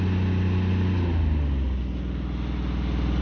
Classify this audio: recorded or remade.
recorded